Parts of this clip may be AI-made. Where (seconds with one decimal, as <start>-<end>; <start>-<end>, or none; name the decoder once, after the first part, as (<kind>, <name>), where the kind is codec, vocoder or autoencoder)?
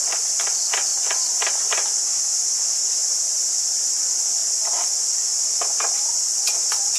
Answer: 0.9-1.9 (vocoder, BigVGAN v2); 3.0-4.0